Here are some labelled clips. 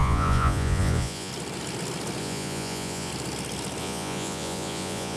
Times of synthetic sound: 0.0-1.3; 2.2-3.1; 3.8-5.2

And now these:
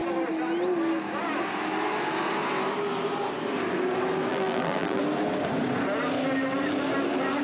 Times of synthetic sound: 4.3-5.0

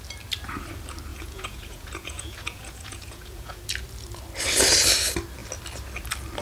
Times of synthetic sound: 1.1-3.6